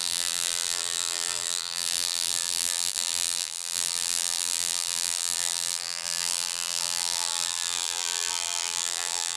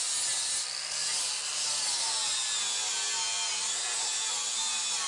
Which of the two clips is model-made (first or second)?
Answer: first